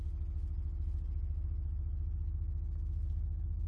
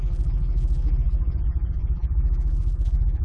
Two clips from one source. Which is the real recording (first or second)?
first